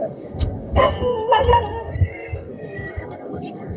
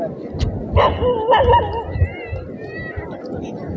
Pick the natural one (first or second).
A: second